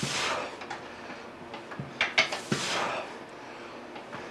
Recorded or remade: recorded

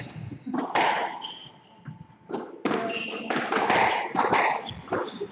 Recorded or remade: recorded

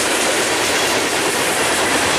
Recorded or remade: remade